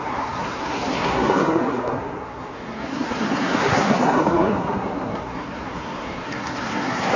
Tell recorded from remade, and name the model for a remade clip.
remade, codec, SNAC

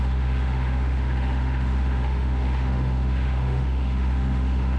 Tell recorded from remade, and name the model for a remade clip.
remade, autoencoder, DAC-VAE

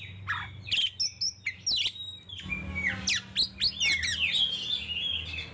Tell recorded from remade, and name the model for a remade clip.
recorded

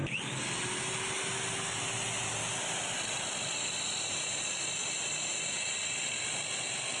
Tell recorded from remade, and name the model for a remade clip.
recorded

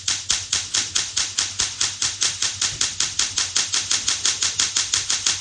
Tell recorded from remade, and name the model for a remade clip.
recorded